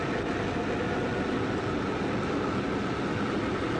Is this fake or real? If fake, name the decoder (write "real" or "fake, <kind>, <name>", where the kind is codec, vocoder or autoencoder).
real